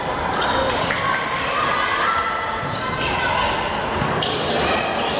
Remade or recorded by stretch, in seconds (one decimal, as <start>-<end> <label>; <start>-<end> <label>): 0.0-5.2 recorded